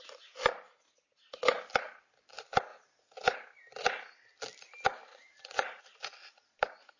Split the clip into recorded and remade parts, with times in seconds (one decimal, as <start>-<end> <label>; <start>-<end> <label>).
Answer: 0.0-5.1 recorded; 5.1-5.8 remade; 5.8-7.0 recorded